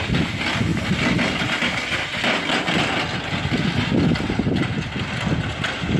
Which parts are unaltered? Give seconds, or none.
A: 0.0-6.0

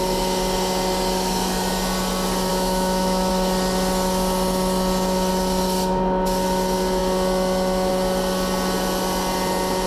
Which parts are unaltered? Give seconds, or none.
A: 0.0-2.5; 3.3-9.9

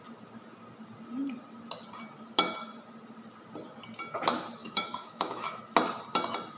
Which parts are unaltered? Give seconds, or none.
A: 0.0-4.6; 5.6-6.6

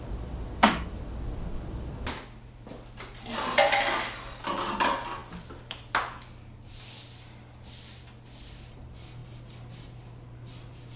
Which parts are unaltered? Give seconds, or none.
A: 0.0-11.0

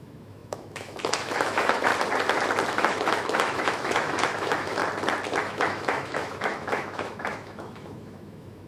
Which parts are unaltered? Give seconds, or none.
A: 1.9-2.7; 4.8-5.4

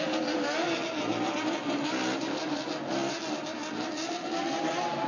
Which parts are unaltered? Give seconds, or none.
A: 0.0-5.1

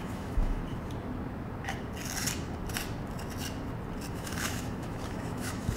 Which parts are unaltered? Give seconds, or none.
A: 0.6-4.1

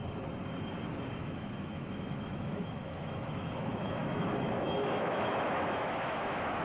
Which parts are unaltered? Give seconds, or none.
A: 0.0-1.2